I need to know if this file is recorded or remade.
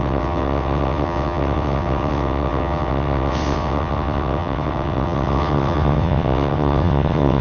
remade